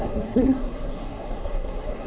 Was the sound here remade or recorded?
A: remade